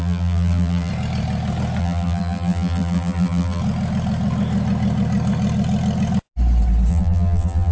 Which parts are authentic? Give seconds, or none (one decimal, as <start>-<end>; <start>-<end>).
0.9-1.8; 3.6-6.9